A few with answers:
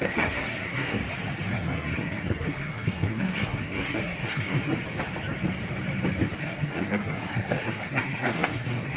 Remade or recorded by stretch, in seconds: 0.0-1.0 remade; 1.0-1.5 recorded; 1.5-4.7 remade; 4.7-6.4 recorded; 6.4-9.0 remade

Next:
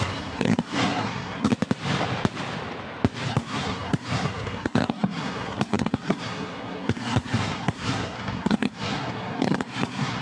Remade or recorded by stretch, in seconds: 0.0-1.5 remade; 1.5-3.3 recorded; 3.3-10.2 remade

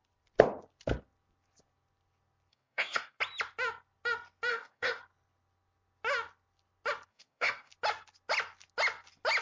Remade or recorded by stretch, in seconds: 0.0-2.5 recorded; 2.5-3.2 remade; 3.2-4.5 recorded; 4.5-5.0 remade; 5.0-7.1 recorded; 7.1-7.7 remade; 7.7-9.4 recorded

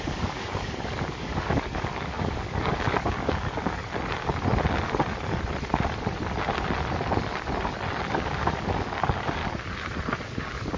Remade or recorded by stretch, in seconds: 0.0-3.8 remade; 3.8-8.1 recorded; 8.1-9.4 remade; 9.4-10.2 recorded; 10.2-10.8 remade

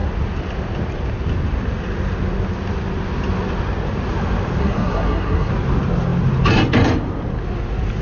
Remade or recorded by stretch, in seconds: 0.0-4.6 recorded; 4.6-5.5 remade; 5.5-8.0 recorded

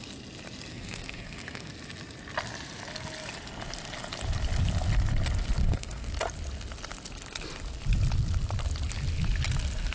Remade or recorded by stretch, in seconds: 0.0-0.7 recorded; 0.7-1.7 remade; 1.7-5.6 recorded; 5.6-6.1 remade; 6.1-9.9 recorded

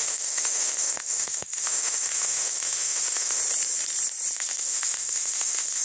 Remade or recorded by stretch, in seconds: 0.0-3.4 remade; 3.4-4.3 recorded; 4.3-5.8 remade